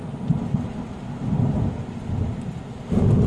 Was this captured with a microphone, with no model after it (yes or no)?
yes